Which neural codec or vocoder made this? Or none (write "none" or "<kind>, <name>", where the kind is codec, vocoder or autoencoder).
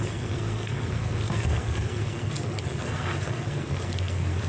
codec, SNAC